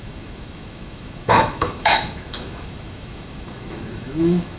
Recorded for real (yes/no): no